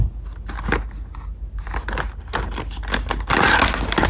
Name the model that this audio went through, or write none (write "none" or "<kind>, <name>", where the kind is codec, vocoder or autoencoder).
none